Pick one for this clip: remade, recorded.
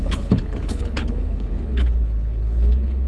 remade